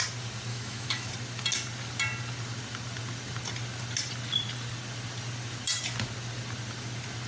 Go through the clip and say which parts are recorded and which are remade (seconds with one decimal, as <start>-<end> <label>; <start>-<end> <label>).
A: 0.0-0.5 recorded; 0.5-1.1 remade; 1.1-7.3 recorded